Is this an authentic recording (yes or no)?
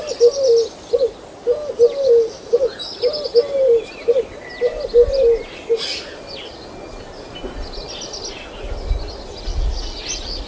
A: yes